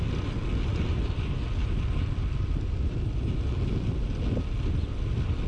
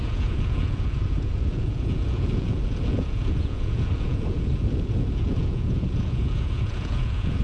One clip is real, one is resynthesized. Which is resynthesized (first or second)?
second